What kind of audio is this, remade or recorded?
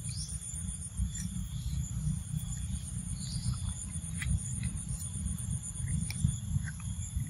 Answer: remade